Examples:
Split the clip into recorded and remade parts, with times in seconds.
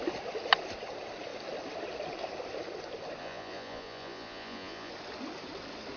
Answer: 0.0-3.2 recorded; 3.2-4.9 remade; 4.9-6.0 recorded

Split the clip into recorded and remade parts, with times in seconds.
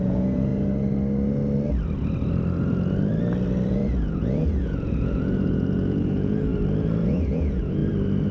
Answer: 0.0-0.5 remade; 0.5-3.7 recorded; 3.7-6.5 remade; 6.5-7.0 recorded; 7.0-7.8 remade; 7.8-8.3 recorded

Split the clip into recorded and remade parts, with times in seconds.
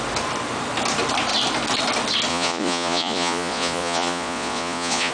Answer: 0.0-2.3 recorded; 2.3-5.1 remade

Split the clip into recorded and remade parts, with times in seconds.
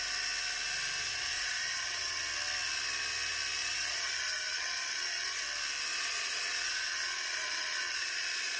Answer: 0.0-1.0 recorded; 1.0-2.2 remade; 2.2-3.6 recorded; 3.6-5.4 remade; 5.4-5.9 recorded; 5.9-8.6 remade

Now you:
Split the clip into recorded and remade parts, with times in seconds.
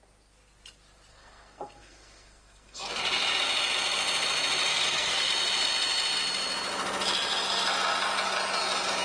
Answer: 0.0-1.1 recorded; 1.1-2.9 remade; 2.9-4.7 recorded; 4.7-5.3 remade; 5.3-9.0 recorded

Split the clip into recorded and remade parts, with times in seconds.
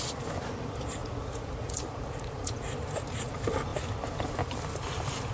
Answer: 0.0-1.0 recorded; 1.0-2.7 remade; 2.7-5.3 recorded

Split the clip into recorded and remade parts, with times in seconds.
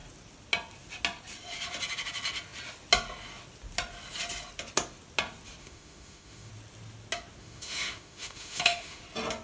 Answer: 0.0-5.6 recorded; 5.6-6.5 remade; 6.5-7.4 recorded; 7.4-9.0 remade; 9.0-9.4 recorded